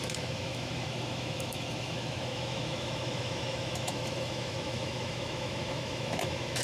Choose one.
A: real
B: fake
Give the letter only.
B